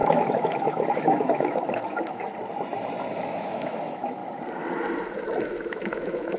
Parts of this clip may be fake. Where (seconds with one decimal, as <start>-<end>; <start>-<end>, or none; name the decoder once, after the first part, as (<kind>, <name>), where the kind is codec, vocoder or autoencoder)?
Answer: 0.0-2.3 (autoencoder, DAC-VAE); 3.1-4.2; 5.4-6.4